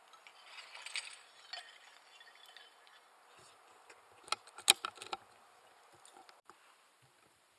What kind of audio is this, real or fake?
real